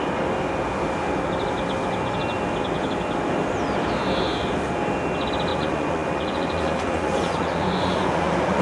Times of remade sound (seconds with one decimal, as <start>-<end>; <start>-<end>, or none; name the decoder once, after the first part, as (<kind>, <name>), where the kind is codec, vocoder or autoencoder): 5.5-8.6 (vocoder, Vocos)